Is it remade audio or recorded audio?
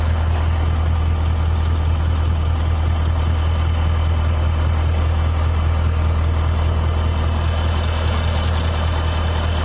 recorded